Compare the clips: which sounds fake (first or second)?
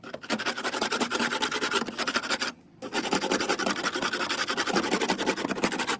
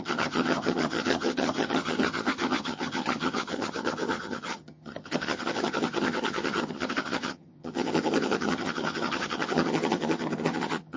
second